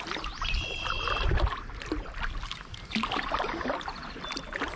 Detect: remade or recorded recorded